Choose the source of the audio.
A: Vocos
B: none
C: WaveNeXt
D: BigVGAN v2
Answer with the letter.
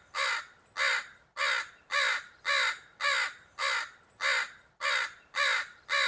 B